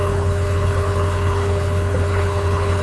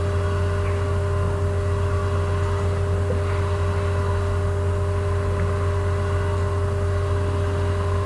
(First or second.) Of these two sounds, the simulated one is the first